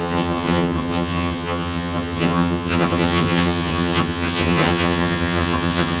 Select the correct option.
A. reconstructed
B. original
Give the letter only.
A